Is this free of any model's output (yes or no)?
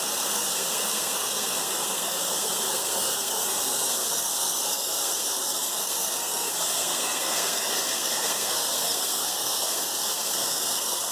no